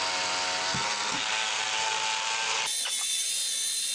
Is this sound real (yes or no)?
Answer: yes